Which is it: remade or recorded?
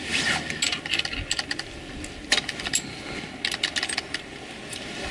recorded